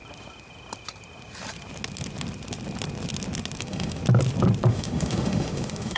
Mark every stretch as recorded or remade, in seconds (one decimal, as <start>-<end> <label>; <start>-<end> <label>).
0.0-3.6 recorded; 3.6-4.0 remade; 4.0-4.7 recorded; 4.7-6.0 remade